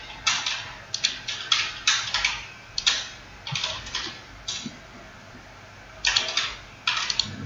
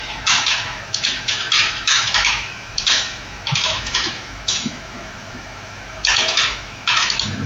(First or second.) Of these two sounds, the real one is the first